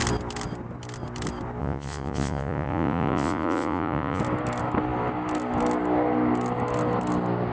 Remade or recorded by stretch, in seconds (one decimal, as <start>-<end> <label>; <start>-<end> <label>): 0.0-1.6 recorded; 1.6-4.2 remade; 4.2-7.5 recorded